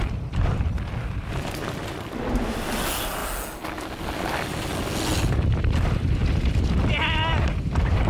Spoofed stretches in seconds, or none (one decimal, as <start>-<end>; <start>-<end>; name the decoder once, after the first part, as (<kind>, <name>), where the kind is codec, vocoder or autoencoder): 0.0-3.2 (vocoder, BigVGAN v2); 4.0-8.1